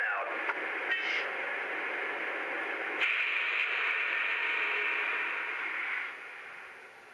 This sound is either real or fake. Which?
real